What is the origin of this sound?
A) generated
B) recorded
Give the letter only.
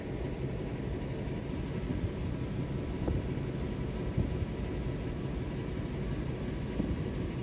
B